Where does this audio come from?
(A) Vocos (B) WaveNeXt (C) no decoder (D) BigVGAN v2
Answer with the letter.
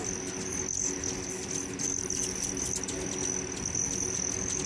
C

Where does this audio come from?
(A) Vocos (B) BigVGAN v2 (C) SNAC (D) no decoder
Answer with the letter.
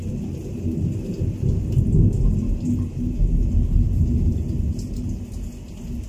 D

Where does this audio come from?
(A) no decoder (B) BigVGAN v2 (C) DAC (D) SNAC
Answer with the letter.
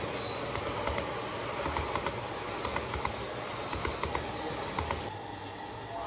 A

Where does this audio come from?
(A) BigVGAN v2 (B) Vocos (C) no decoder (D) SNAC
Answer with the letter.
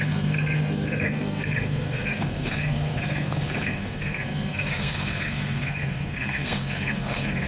D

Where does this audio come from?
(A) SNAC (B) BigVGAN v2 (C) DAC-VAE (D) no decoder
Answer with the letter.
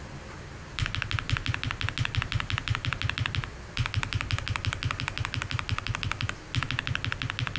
D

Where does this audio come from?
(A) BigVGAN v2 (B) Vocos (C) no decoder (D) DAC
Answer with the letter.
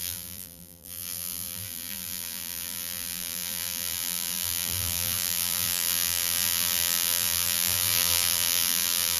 A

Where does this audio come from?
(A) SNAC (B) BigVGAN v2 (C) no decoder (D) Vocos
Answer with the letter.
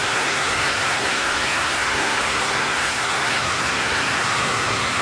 A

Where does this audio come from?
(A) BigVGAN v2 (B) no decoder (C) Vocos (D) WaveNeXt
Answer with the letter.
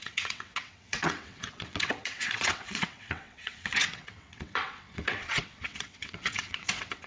D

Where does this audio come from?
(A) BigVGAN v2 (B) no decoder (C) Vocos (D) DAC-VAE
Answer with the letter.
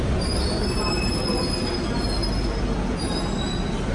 B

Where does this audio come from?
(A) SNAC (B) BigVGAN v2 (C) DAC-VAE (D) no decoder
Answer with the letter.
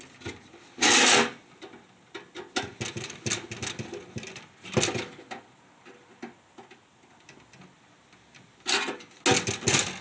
D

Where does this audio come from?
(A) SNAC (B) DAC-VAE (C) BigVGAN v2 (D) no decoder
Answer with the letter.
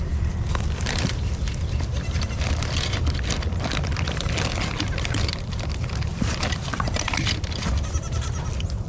C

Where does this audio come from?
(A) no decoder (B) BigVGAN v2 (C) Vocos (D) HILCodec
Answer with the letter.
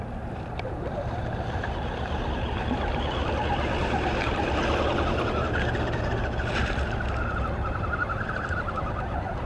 B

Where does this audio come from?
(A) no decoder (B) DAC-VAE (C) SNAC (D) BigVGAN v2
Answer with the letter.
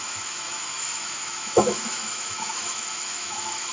B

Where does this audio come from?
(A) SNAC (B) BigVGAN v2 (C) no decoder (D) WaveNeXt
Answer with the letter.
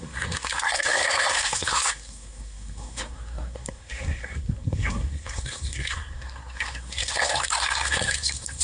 A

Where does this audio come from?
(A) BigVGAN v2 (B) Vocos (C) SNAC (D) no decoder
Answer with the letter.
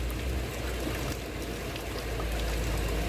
D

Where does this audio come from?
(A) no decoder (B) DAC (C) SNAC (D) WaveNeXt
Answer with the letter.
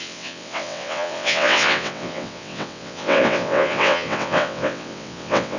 D